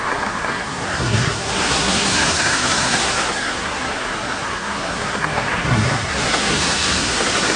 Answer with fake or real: fake